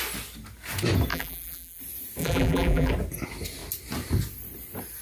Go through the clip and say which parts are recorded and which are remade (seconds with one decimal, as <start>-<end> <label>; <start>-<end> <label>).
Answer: 0.0-1.1 recorded; 1.1-1.8 remade; 1.8-2.2 recorded; 2.2-2.9 remade; 2.9-5.0 recorded